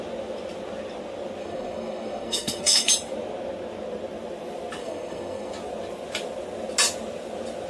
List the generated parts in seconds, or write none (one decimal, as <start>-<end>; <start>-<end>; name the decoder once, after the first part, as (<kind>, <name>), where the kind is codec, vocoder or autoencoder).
1.4-2.9 (codec, SNAC); 4.8-5.5